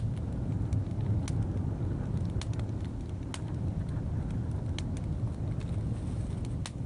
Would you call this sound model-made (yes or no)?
no